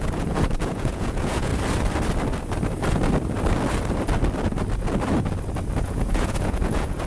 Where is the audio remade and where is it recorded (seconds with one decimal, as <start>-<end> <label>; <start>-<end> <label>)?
0.0-1.5 remade; 1.5-5.8 recorded; 5.8-7.1 remade